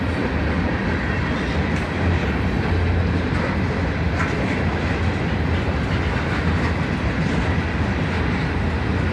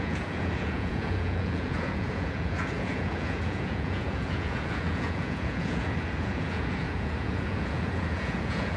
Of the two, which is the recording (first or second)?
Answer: first